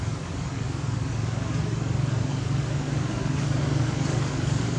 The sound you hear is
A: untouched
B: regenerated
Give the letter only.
B